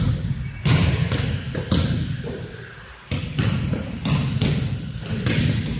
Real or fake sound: real